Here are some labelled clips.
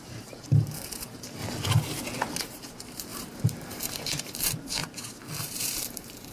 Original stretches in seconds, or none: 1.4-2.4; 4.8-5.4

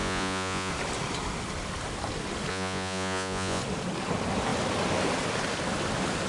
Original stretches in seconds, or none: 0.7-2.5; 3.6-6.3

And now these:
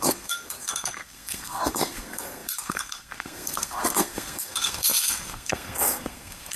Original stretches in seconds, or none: none

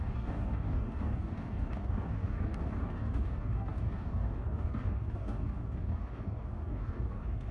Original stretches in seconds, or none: none

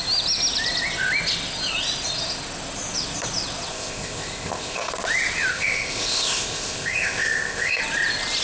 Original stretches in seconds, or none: 0.0-3.7; 4.9-5.5; 7.8-8.4

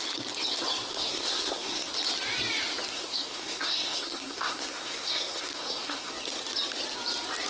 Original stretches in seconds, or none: 0.0-0.9; 1.9-2.9; 6.1-7.5

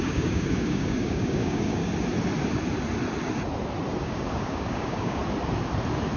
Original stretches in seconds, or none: 1.8-4.0; 5.2-6.2